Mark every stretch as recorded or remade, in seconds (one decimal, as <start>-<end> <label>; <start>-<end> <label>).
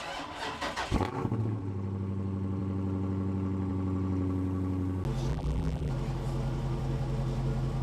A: 0.0-5.3 recorded; 5.3-5.9 remade; 5.9-7.8 recorded